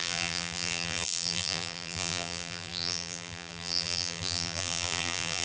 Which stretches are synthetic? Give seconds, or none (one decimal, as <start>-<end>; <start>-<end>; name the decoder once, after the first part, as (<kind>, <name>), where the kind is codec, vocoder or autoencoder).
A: 0.0-5.4 (vocoder, BigVGAN v2)